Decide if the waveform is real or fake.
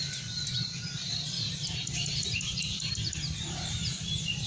fake